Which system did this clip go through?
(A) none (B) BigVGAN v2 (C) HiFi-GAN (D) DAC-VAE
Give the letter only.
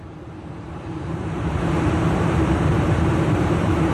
B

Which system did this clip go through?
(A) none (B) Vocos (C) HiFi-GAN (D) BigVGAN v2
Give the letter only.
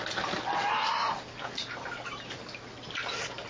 A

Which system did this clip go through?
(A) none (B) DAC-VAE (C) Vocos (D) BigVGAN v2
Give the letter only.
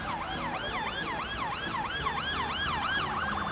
A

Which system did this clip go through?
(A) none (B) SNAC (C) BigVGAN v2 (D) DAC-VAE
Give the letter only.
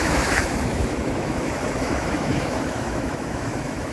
D